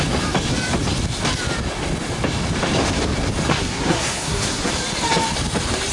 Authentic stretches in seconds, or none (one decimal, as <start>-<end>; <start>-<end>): 0.0-3.5; 4.7-5.9